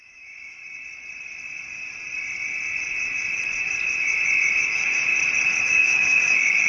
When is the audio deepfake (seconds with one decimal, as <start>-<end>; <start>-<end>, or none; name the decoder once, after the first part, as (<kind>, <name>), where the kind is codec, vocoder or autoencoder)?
0.0-0.6 (autoencoder, DAC-VAE); 4.6-5.1; 5.6-6.7